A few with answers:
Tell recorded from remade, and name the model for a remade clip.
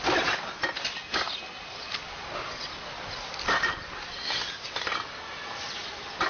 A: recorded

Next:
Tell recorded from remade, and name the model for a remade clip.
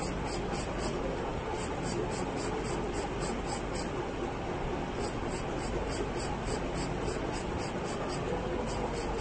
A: recorded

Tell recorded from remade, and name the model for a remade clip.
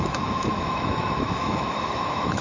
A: remade, autoencoder, DAC-VAE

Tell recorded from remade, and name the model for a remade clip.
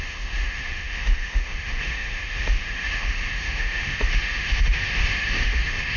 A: remade, autoencoder, DAC-VAE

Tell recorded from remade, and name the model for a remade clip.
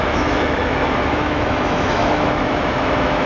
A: remade, autoencoder, DAC-VAE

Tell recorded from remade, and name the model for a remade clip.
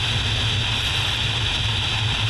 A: recorded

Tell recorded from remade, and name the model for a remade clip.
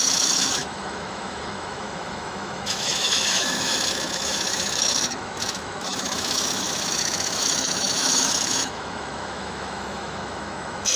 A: remade, autoencoder, DAC-VAE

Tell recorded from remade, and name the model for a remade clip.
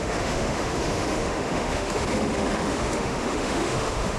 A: remade, autoencoder, DAC-VAE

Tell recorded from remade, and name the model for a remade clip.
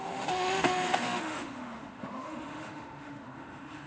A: remade, autoencoder, DAC-VAE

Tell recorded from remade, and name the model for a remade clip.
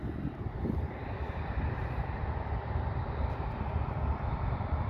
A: recorded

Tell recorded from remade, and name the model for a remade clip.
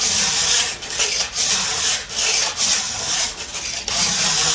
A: recorded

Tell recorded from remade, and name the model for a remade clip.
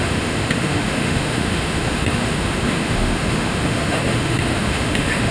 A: remade, autoencoder, DAC-VAE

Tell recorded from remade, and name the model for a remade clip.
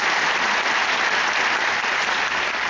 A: recorded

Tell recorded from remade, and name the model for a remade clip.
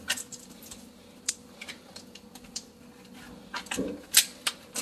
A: recorded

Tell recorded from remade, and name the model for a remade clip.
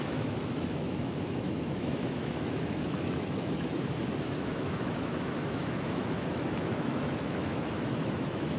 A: remade, autoencoder, DAC-VAE